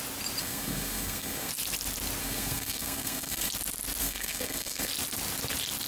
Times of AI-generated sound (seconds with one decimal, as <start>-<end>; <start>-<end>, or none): 0.4-1.5; 2.2-3.5; 4.0-4.9